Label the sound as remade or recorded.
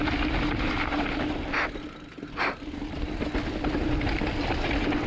recorded